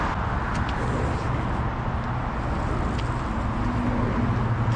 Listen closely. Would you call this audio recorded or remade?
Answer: recorded